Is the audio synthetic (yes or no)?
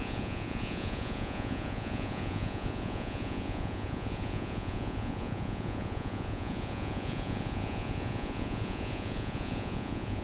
yes